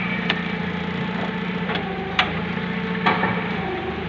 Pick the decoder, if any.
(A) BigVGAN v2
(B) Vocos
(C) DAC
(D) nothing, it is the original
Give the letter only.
D